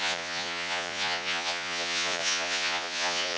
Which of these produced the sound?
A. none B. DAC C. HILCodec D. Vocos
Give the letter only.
D